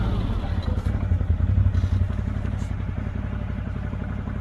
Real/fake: real